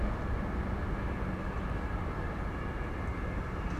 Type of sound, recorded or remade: recorded